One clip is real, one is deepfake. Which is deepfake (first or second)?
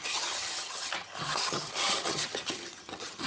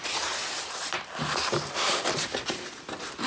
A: first